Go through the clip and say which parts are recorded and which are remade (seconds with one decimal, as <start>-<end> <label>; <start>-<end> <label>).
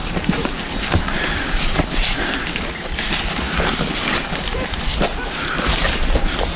0.0-3.6 remade; 3.6-4.5 recorded; 4.5-5.0 remade; 5.0-6.6 recorded